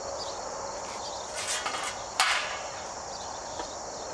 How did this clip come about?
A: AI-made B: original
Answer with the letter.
B